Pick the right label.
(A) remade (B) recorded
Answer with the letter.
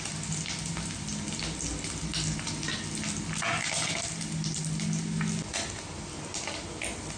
B